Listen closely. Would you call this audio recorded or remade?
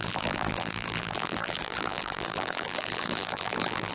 remade